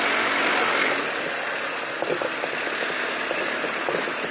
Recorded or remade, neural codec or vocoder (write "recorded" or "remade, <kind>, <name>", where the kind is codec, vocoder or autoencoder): recorded